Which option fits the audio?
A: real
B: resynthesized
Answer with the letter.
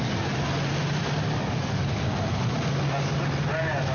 A